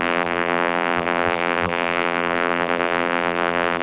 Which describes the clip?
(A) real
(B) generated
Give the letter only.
B